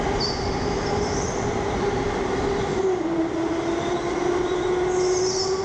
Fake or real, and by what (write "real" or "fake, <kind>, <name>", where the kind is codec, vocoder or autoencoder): real